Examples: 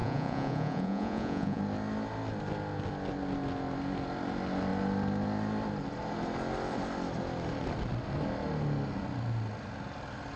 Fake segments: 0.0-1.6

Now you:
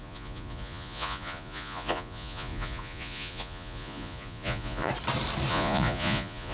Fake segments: 0.0-4.9; 5.5-6.5